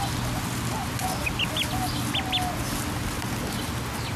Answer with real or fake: real